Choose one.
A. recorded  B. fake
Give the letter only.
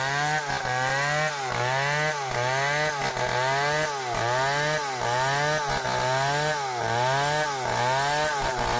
A